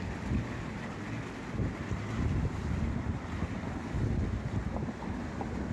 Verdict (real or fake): real